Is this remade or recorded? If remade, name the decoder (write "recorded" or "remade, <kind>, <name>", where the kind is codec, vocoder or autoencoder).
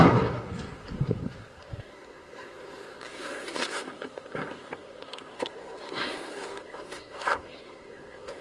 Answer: remade, codec, SNAC